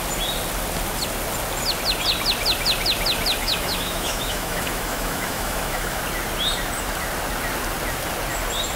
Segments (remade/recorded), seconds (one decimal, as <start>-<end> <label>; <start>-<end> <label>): 0.0-3.4 recorded; 3.4-6.0 remade; 6.0-8.8 recorded